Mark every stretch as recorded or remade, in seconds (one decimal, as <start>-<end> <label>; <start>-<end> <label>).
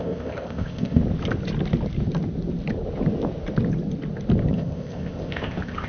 0.0-1.0 remade; 1.0-4.5 recorded; 4.5-5.9 remade